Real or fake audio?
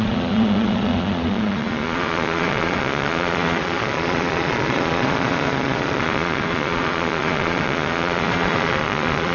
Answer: fake